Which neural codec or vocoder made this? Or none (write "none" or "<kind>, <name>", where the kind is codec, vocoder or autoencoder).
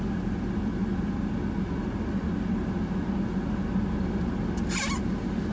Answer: none